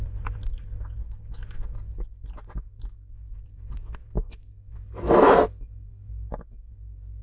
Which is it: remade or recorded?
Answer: recorded